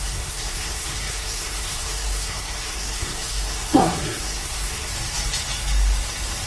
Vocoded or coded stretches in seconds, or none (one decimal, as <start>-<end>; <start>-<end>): 0.0-4.9